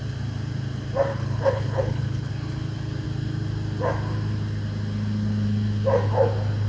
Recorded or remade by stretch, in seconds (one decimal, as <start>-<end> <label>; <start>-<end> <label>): 0.0-1.1 recorded; 1.1-2.3 remade; 2.3-6.7 recorded